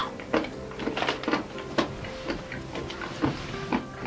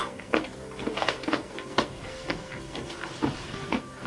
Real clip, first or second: first